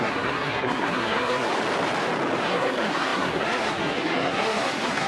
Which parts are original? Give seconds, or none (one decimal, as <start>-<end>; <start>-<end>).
1.5-2.4